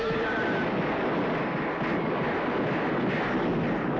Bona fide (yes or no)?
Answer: yes